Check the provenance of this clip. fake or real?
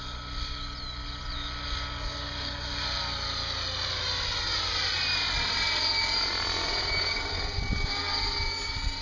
real